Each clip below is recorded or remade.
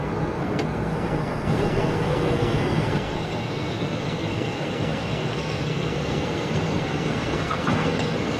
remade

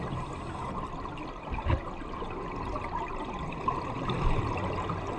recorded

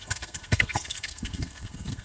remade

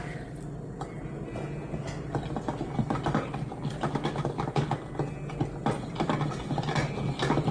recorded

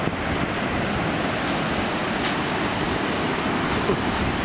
recorded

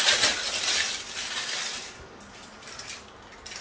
recorded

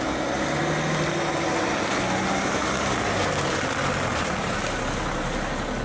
recorded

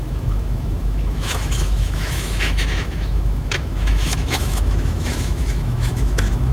remade